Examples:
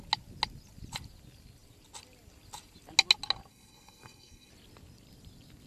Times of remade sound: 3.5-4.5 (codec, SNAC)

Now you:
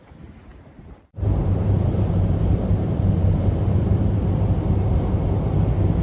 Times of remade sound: 0.5-4.1 (vocoder, BigVGAN v2)

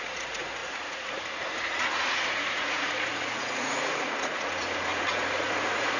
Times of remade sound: 0.0-6.0 (vocoder, Vocos)

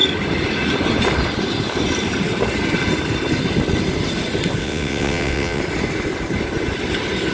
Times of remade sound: 4.6-5.6 (vocoder, WaveNeXt)

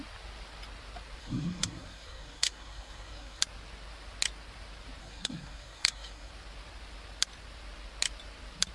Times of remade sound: 1.2-3.4 (codec, SNAC); 5.0-6.3